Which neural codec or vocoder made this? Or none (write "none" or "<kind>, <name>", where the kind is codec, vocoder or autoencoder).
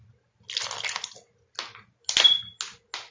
none